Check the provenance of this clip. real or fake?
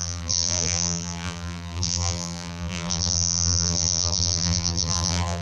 fake